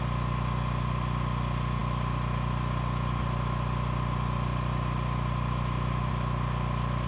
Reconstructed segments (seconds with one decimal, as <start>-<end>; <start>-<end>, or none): none